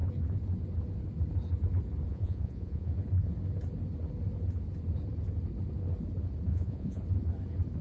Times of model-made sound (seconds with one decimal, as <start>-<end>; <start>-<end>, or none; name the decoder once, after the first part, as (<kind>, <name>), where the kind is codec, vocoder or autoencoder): 2.1-2.9 (vocoder, Vocos); 6.5-7.0